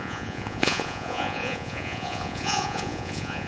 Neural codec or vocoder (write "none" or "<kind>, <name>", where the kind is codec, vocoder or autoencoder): vocoder, Vocos